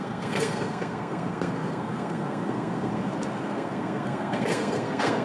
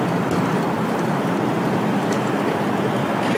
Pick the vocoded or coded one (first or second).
first